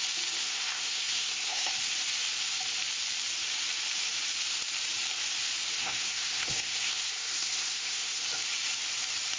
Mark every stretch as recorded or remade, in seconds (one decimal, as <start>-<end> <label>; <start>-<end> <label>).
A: 0.0-0.4 recorded; 0.4-1.7 remade; 1.7-5.8 recorded; 5.8-8.2 remade; 8.2-9.4 recorded